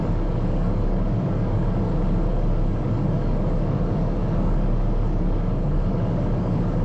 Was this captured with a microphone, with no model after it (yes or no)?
no